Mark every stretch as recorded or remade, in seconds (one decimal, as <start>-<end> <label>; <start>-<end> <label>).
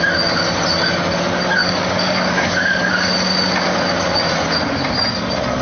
0.0-1.6 recorded; 1.6-2.9 remade; 2.9-5.6 recorded